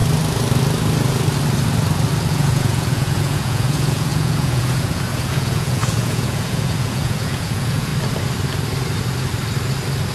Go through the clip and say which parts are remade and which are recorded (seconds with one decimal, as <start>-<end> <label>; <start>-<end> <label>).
0.0-2.3 recorded; 2.3-7.9 remade; 7.9-10.1 recorded